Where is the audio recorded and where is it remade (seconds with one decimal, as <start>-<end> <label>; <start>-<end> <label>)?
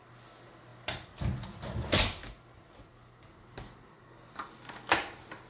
0.0-5.5 recorded